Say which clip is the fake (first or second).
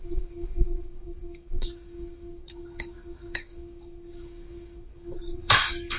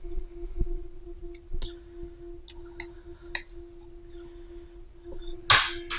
first